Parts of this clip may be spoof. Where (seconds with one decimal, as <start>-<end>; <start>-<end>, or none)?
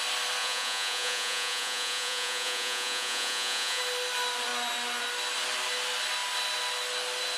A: 0.4-3.8